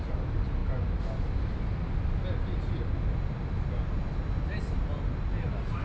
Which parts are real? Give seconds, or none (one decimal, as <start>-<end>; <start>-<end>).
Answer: 0.0-5.8